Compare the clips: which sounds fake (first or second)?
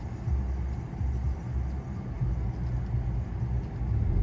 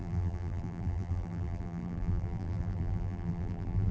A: second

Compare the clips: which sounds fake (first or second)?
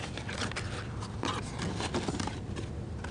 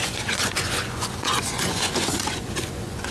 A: second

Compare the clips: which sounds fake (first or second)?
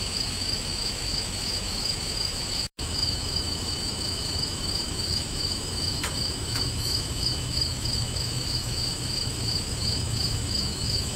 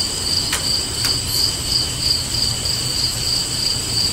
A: first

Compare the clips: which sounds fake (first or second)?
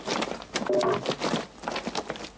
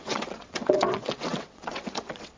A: second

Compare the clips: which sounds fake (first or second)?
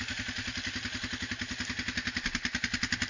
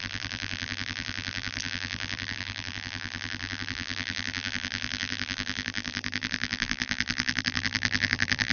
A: second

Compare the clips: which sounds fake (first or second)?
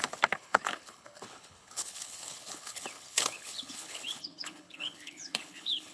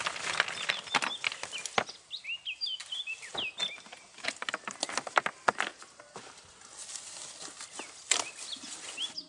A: first